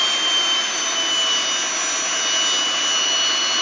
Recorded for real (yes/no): yes